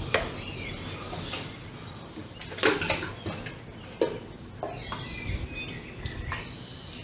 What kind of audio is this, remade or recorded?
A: recorded